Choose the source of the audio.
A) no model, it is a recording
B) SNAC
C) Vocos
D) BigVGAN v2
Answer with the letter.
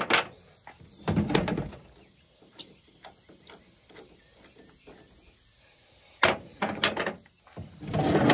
A